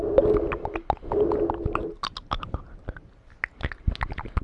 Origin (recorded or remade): recorded